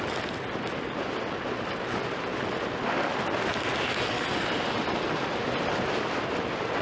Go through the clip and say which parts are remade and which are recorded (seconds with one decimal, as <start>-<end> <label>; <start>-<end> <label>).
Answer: 0.0-6.8 recorded